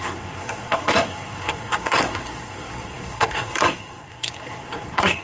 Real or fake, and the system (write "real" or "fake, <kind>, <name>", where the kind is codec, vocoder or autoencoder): fake, codec, SNAC